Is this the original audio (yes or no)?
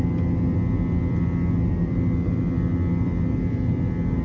yes